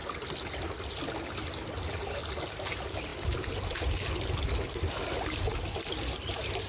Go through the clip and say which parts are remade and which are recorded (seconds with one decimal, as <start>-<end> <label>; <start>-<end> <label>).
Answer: 0.0-6.7 recorded